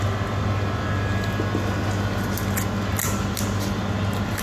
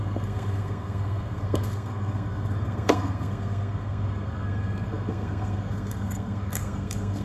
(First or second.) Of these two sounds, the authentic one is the first